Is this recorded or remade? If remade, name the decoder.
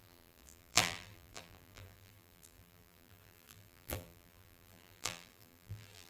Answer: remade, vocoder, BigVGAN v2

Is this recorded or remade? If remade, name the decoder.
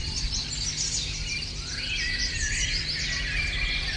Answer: recorded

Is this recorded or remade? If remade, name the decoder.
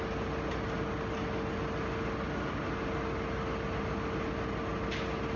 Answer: recorded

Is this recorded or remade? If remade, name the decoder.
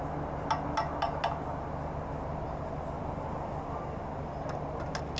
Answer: recorded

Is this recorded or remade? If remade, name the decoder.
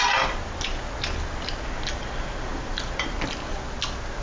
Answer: recorded